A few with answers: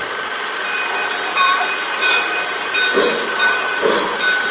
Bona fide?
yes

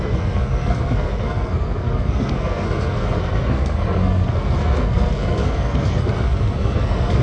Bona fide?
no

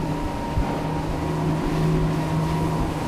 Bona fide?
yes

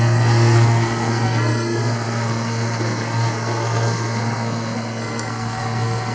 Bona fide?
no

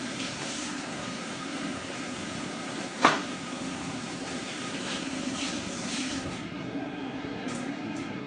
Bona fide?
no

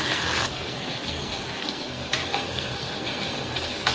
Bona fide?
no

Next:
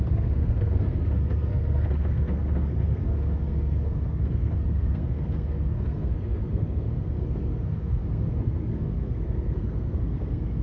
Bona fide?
no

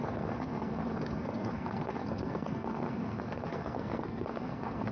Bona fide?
no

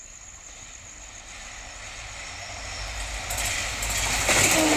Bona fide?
yes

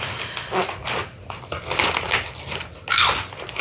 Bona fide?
yes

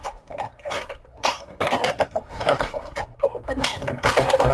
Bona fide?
no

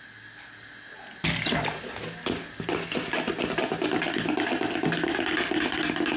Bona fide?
yes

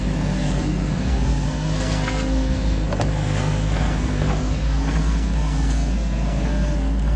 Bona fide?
no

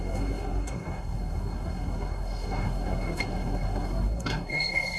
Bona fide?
no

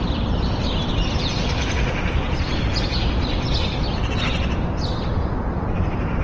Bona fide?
yes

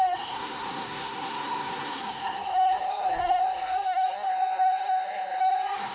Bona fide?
no